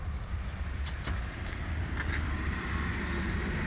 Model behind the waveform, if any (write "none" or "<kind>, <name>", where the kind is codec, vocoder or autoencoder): vocoder, BigVGAN v2